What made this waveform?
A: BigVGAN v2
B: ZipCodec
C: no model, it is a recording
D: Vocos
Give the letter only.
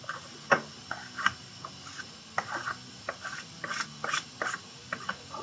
C